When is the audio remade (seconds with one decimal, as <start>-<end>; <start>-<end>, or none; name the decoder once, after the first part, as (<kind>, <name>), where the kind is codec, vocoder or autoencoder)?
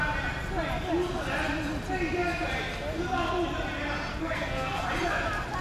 4.1-4.8 (codec, SNAC)